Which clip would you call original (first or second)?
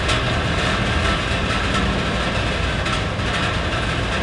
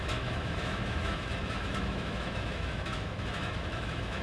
first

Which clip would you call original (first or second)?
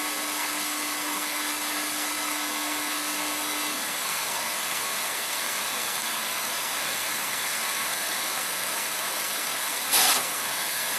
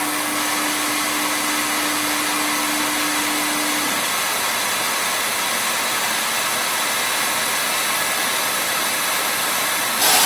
second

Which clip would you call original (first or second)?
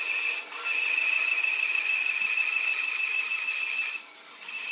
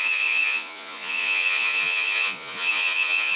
first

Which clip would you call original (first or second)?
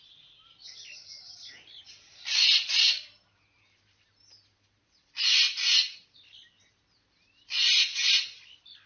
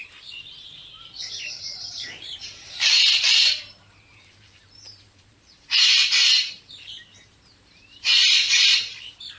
first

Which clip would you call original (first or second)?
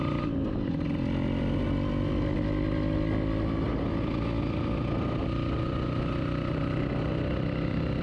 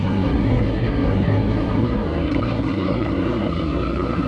first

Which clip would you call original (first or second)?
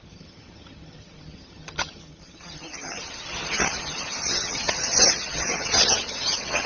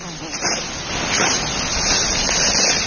second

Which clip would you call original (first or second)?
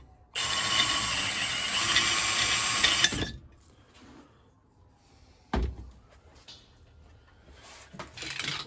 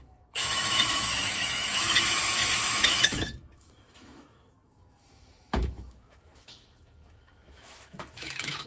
first